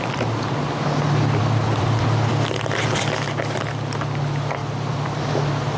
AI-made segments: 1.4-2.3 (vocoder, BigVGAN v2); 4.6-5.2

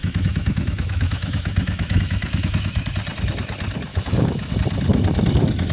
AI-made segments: 0.0-2.9 (autoencoder, DAC-VAE); 3.9-4.5

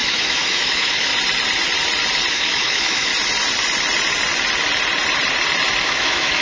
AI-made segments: 0.0-1.1 (autoencoder, DAC-VAE); 2.3-3.1; 5.8-6.4